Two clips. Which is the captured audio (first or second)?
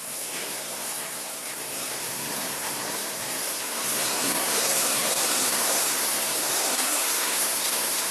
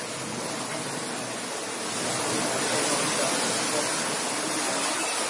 second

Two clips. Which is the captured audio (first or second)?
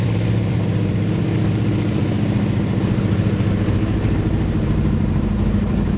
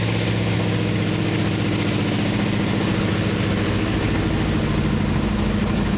second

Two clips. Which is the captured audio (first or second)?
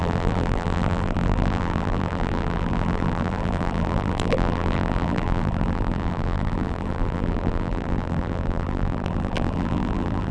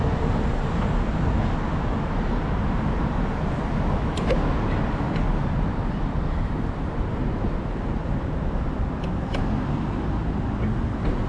second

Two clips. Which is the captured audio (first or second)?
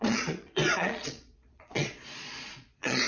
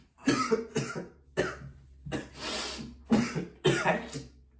second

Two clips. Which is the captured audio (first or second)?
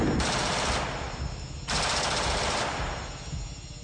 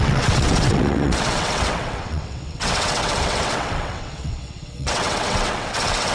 first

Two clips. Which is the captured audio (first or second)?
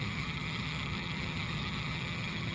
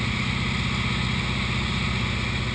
second